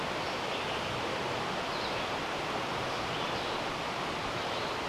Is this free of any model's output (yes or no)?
yes